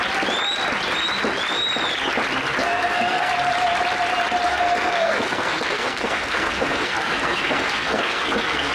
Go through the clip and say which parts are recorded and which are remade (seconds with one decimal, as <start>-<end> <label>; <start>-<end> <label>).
0.0-2.6 recorded; 2.6-3.3 remade; 3.3-4.5 recorded; 4.5-8.7 remade